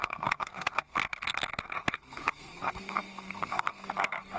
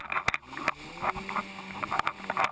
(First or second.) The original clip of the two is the second